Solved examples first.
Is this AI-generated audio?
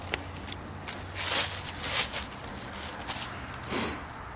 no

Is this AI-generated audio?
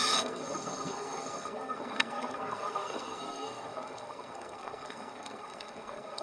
yes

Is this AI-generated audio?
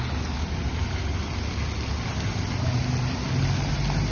no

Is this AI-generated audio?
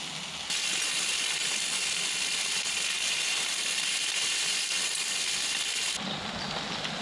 no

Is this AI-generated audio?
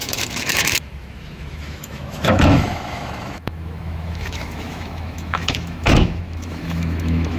yes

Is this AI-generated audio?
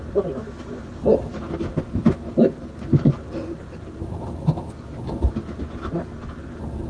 no